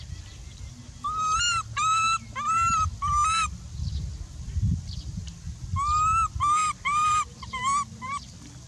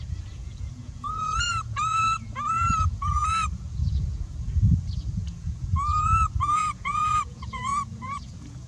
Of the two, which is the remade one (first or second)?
second